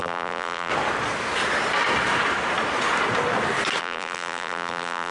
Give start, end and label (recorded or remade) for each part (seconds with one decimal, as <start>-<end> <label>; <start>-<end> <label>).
0.0-0.7 remade; 0.7-3.8 recorded; 3.8-5.1 remade